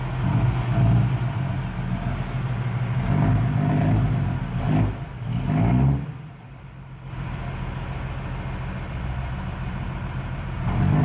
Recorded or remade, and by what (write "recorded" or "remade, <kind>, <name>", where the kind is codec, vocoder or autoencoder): recorded